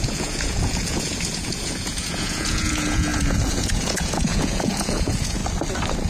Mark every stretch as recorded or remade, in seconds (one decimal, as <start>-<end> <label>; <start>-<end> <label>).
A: 0.0-5.4 remade; 5.4-6.1 recorded